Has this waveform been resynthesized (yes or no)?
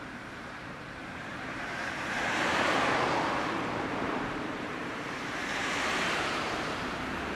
yes